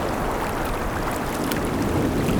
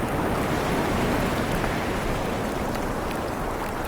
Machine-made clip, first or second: second